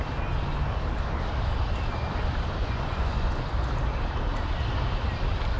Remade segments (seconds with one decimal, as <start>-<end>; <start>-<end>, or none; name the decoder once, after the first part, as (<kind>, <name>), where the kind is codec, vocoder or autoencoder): 2.6-3.5 (vocoder, Vocos)